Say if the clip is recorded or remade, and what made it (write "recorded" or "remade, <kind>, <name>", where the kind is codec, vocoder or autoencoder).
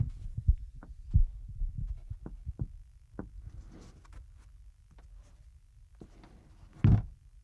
recorded